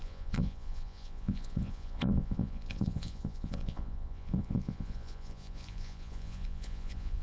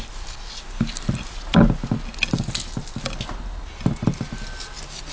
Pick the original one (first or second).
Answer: second